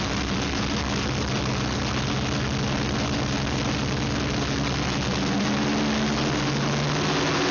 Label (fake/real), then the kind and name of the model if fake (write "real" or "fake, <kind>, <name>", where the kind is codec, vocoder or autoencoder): real